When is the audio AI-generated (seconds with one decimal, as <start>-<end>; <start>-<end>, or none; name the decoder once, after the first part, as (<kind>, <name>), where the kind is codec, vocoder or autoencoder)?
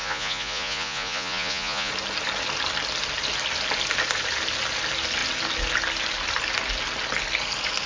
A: 0.0-1.9 (vocoder, Vocos)